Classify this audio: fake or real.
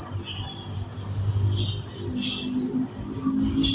real